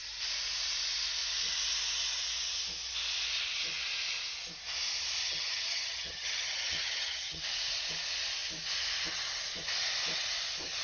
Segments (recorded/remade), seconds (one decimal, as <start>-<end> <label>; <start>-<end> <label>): 0.0-5.2 recorded; 5.2-7.4 remade; 7.4-10.8 recorded